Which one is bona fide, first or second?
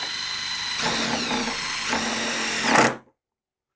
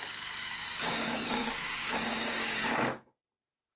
first